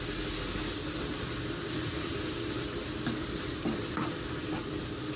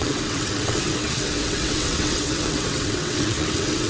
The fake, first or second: second